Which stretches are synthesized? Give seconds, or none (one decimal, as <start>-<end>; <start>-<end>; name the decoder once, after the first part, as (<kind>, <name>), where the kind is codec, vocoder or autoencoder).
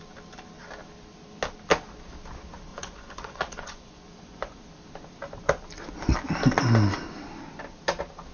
2.7-4.6 (vocoder, Vocos)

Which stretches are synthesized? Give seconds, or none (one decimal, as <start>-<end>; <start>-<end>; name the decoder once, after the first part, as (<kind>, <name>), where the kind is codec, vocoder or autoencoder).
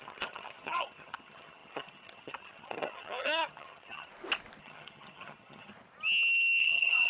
0.0-4.1 (vocoder, HiFi-GAN); 4.6-5.7; 6.6-7.1